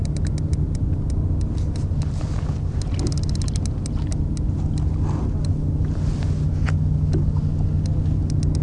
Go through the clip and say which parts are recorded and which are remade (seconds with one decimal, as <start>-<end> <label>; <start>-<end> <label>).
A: 0.0-8.6 recorded